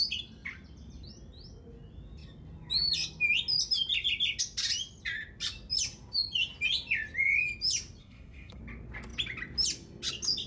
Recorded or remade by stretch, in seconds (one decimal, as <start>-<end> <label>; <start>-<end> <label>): 0.0-8.0 recorded; 8.0-8.6 remade; 8.6-10.5 recorded

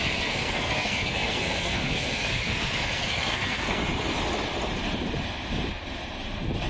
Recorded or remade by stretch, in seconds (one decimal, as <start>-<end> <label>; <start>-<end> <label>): 0.0-3.8 remade; 3.8-6.7 recorded

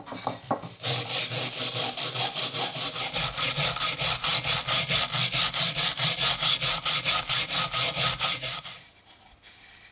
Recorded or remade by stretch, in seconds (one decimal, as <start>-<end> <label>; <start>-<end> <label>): 0.0-9.9 recorded

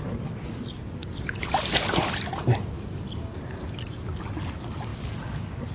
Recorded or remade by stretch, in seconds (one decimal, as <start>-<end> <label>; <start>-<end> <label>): 0.0-5.7 recorded